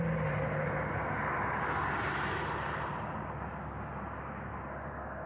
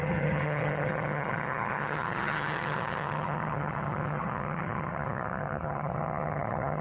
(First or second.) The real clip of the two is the first